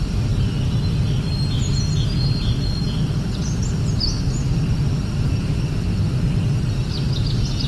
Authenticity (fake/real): real